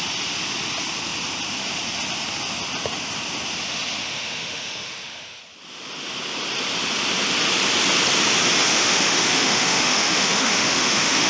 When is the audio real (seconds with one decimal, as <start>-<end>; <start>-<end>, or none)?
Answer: 0.0-4.0; 5.4-8.7